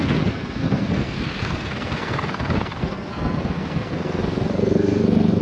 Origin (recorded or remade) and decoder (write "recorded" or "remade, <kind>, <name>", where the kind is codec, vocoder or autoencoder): remade, codec, SNAC